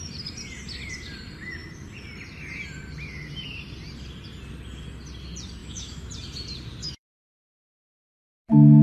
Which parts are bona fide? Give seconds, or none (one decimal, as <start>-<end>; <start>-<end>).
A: 0.0-5.6; 6.1-6.8; 7.5-8.8